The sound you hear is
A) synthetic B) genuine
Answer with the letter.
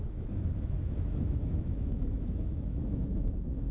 A